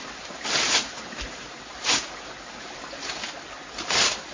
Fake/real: real